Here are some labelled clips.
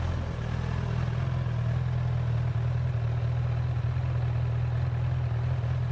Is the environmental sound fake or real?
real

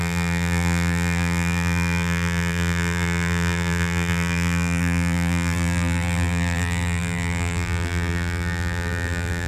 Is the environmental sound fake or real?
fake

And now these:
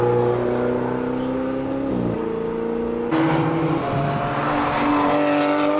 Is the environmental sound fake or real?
real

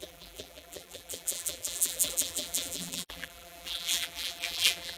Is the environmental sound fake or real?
fake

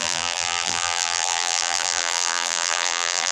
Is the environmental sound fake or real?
fake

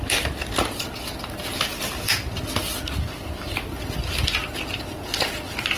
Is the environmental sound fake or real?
real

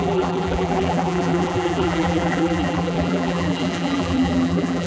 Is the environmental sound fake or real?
fake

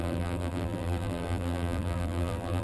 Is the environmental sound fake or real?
fake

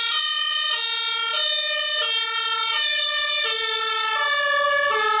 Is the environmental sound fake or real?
fake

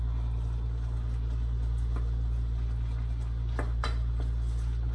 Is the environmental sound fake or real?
real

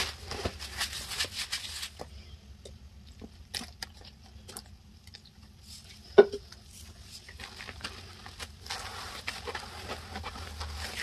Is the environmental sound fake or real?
real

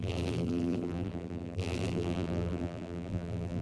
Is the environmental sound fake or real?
fake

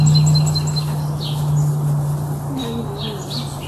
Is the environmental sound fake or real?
real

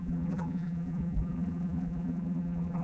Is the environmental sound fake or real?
fake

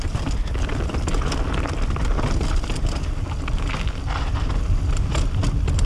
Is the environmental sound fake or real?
real